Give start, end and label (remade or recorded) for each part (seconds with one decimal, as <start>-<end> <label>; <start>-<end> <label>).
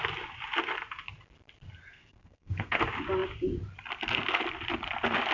0.0-1.9 recorded; 1.9-2.8 remade; 2.8-5.3 recorded